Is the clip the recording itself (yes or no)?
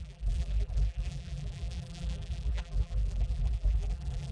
no